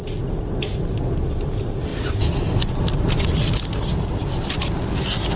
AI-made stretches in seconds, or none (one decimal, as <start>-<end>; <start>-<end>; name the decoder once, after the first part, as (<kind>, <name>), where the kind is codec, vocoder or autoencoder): none